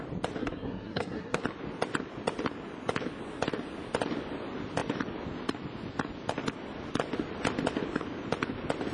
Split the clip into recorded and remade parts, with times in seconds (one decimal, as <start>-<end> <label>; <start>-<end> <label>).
0.0-0.4 recorded; 0.4-1.4 remade; 1.4-8.9 recorded